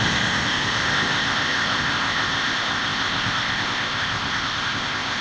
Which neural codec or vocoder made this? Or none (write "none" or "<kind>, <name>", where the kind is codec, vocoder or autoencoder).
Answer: codec, ZipCodec